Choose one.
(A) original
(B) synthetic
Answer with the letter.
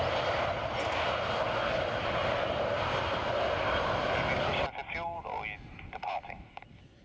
A